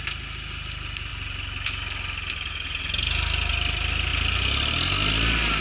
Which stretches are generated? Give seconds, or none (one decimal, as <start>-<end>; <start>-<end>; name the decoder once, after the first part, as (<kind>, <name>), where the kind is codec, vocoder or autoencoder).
none